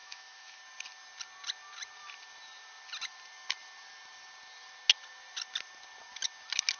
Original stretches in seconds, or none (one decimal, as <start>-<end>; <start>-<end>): 0.6-6.8